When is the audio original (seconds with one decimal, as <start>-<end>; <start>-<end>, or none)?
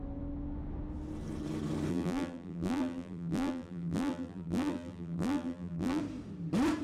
0.0-1.9; 6.0-6.8